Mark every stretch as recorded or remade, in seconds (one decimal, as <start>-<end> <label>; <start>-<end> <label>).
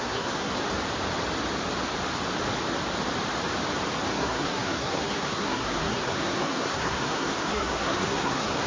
0.0-0.5 remade; 0.5-4.1 recorded; 4.1-8.7 remade